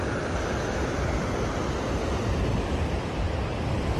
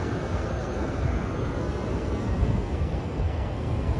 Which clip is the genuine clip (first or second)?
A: first